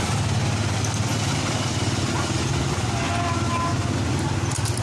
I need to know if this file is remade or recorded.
recorded